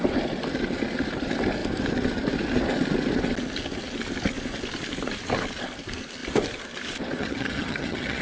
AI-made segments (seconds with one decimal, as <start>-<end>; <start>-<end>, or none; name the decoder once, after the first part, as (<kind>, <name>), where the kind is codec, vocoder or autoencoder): 7.2-8.2 (vocoder, HiFi-GAN)